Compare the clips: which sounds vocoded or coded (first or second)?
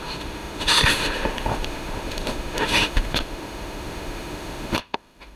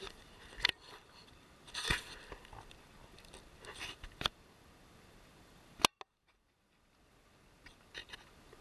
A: first